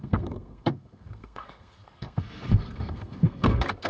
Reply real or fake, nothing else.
fake